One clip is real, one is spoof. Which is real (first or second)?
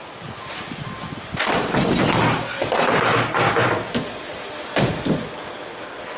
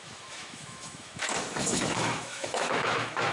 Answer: first